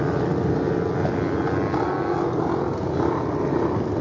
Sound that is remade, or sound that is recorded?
recorded